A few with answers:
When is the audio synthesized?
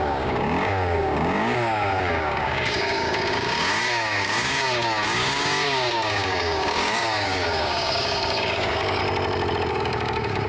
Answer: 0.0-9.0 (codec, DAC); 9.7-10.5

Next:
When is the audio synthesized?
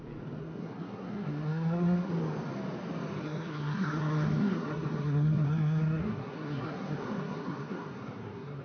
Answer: 0.4-2.1 (codec, SNAC); 3.2-8.6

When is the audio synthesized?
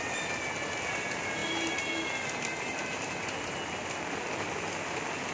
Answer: none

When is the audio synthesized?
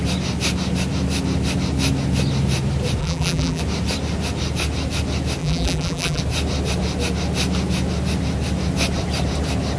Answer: 3.0-3.6 (vocoder, BigVGAN v2); 5.4-6.2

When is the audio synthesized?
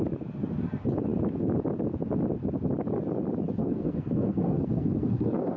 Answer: 3.6-5.6 (codec, SNAC)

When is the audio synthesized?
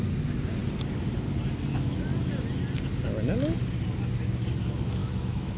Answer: 5.0-5.6 (autoencoder, DAC-VAE)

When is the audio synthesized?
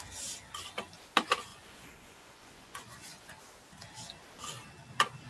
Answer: 1.5-3.4 (vocoder, Vocos)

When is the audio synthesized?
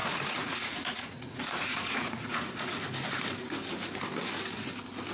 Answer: 0.0-2.8 (vocoder, Vocos)